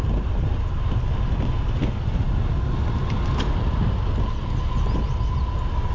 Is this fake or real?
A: real